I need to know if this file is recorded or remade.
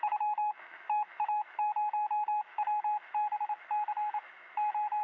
remade